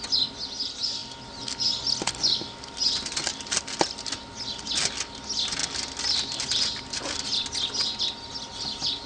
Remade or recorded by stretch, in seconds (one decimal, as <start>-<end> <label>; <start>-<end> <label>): 0.0-9.1 recorded